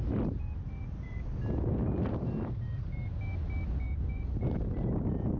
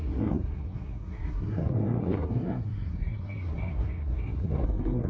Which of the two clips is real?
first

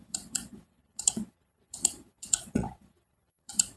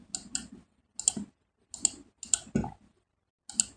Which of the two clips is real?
second